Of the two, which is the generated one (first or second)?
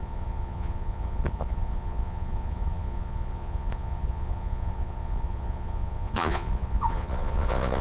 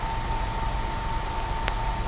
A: first